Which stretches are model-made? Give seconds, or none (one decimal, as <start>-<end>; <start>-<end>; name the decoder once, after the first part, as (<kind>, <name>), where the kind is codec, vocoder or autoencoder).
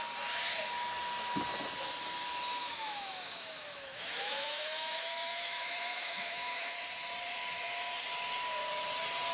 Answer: 2.6-6.8 (autoencoder, DAC-VAE)